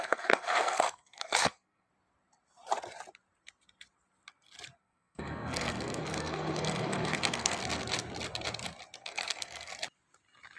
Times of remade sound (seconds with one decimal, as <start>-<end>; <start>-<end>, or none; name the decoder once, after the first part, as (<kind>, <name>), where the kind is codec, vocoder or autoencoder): 0.0-1.9 (codec, SNAC); 4.8-7.6; 9.0-9.7